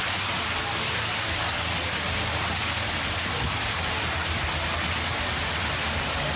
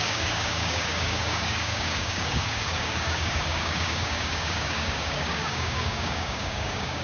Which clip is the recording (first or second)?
first